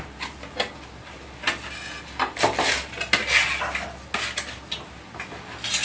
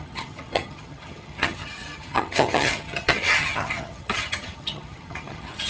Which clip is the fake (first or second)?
second